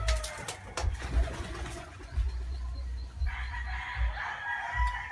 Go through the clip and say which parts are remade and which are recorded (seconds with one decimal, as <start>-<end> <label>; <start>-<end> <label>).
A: 0.0-0.8 recorded; 0.8-3.9 remade; 3.9-5.1 recorded

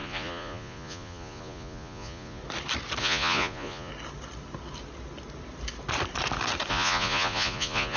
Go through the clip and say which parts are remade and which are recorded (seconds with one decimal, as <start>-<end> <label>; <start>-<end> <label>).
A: 0.0-2.4 remade; 2.4-3.0 recorded; 3.0-3.9 remade; 3.9-6.7 recorded; 6.7-8.0 remade

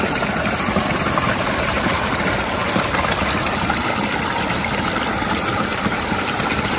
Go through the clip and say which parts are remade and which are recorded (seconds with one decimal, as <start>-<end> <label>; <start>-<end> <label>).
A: 0.0-6.8 recorded

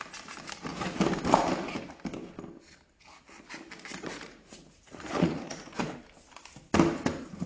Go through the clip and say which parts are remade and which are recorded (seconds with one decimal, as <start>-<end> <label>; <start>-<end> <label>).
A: 0.0-3.9 recorded; 3.9-5.8 remade; 5.8-7.5 recorded